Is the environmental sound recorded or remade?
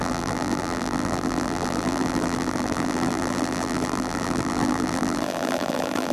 remade